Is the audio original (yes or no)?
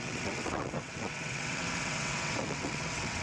no